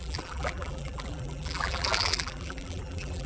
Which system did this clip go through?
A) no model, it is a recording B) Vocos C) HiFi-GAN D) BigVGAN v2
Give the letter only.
D